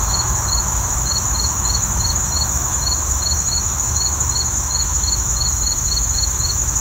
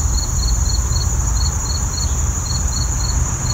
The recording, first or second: second